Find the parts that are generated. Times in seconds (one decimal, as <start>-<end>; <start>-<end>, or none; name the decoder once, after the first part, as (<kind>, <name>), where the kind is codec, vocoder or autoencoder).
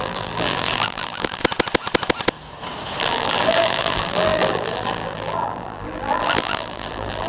0.0-1.4 (vocoder, BigVGAN v2); 3.0-7.3